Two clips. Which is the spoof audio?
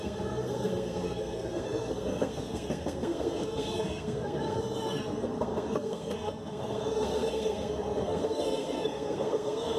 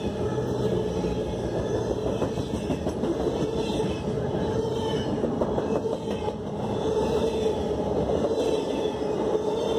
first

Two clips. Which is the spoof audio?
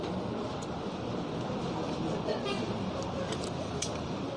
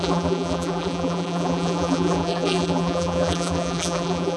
second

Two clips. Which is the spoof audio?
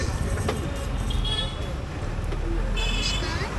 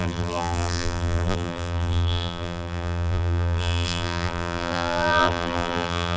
second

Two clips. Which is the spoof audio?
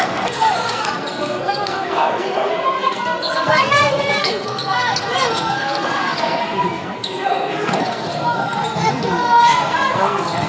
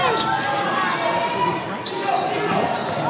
first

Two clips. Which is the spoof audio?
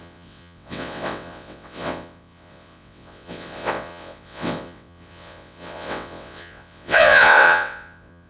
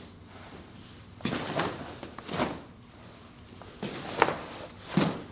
first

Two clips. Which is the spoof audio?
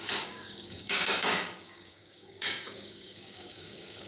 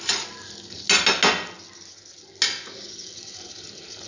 first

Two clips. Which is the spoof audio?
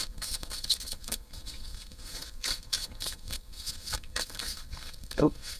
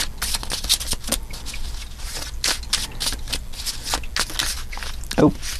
first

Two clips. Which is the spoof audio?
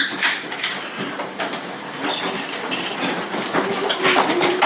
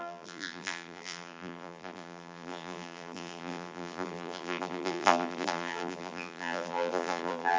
second